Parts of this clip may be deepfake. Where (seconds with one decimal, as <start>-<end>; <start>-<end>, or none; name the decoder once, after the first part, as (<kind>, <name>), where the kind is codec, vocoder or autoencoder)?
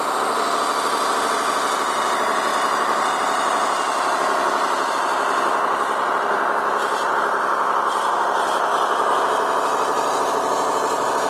2.5-4.9 (vocoder, BigVGAN v2)